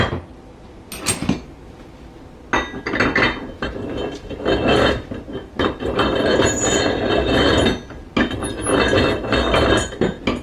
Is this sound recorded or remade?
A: recorded